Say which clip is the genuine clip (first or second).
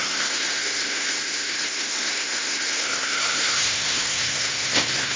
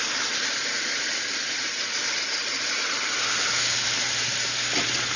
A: second